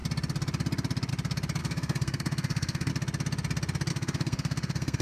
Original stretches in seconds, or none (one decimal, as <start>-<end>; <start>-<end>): 0.0-1.6; 2.9-3.9